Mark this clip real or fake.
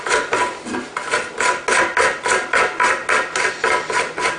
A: real